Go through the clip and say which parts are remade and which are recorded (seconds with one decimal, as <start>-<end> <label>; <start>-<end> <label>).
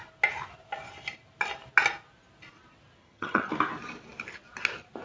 0.0-3.0 recorded; 3.0-3.5 remade; 3.5-5.0 recorded